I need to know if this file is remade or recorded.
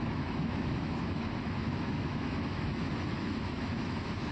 remade